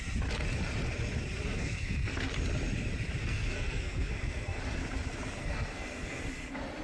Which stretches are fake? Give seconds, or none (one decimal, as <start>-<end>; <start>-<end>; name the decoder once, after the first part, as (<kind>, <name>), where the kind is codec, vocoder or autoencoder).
1.5-2.3 (codec, SNAC); 3.2-4.6; 5.4-6.2